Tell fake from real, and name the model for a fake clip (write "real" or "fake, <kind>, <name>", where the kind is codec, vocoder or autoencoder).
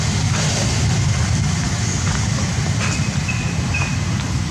real